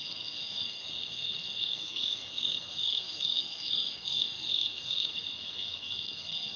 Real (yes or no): no